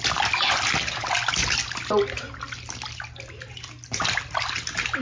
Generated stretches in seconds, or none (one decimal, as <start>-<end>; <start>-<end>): none